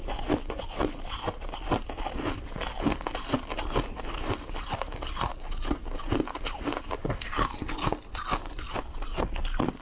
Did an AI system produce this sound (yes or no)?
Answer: no